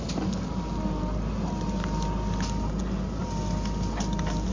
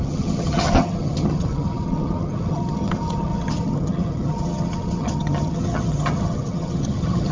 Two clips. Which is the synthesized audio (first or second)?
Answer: second